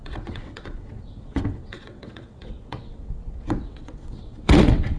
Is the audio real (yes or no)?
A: no